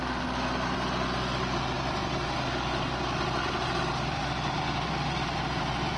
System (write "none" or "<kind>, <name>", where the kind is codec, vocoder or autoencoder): none